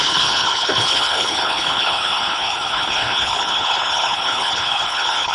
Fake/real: fake